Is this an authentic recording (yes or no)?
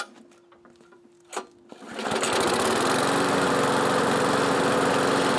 yes